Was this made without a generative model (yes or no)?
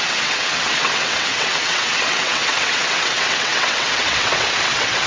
no